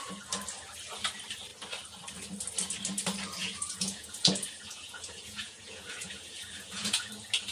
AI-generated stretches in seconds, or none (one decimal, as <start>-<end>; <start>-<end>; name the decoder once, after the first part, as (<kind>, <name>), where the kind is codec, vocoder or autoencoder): 3.4-7.1 (vocoder, Vocos)

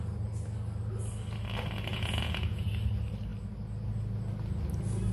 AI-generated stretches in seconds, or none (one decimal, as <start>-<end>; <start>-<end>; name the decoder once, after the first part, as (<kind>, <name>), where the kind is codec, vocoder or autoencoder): 1.9-2.7 (vocoder, Vocos)

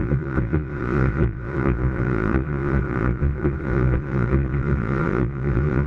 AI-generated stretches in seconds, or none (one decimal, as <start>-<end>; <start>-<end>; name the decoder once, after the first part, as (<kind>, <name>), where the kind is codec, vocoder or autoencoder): 0.0-5.9 (vocoder, Vocos)

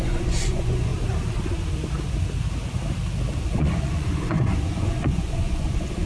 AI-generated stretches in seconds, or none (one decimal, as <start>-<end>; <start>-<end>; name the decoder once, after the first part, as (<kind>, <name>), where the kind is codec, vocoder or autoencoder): 0.0-0.9 (vocoder, Vocos); 3.4-6.1

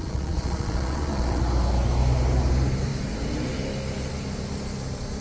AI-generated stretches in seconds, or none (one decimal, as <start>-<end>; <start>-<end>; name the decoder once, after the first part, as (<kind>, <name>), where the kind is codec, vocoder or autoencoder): 0.0-1.4 (vocoder, Vocos)